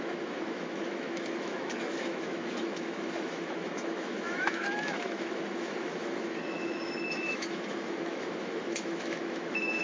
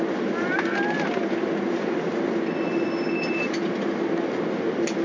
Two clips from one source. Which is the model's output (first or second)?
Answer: first